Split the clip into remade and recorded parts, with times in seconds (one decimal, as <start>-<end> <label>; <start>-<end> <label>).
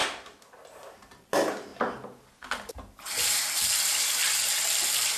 0.0-0.7 recorded; 0.7-1.7 remade; 1.7-2.7 recorded; 2.7-4.2 remade; 4.2-5.2 recorded